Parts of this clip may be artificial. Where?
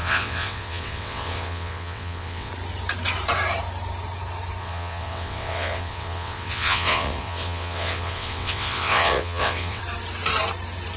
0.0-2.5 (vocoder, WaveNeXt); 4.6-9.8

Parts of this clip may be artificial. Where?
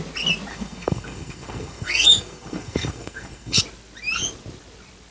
0.5-3.6 (codec, SNAC)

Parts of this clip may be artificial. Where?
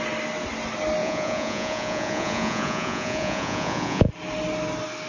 1.0-4.1 (vocoder, Vocos)